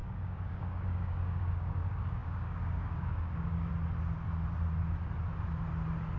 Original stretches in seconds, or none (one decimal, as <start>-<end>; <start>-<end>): 3.7-6.2